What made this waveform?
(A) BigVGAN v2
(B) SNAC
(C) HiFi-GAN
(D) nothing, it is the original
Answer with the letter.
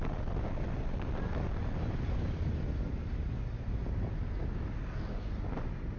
D